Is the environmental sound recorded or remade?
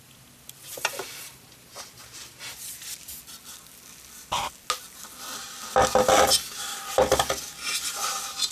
recorded